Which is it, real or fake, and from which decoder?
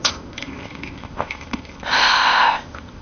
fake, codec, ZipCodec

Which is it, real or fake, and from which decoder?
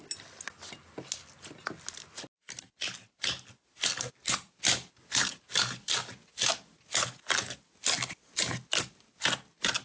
real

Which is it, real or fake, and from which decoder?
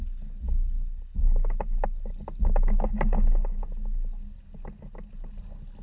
real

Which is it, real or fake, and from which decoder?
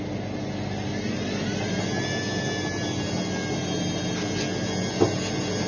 real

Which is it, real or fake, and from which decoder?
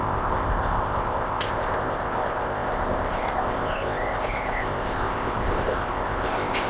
fake, codec, ZipCodec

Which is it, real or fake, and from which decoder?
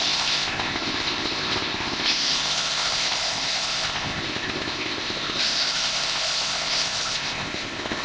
fake, codec, ZipCodec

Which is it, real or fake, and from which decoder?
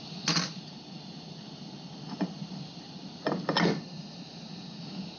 real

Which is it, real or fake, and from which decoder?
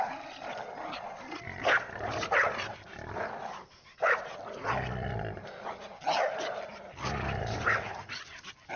real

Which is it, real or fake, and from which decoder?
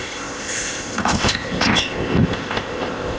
fake, codec, ZipCodec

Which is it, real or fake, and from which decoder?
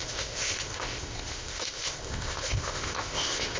fake, codec, ZipCodec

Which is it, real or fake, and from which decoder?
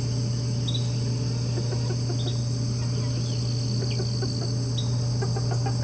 real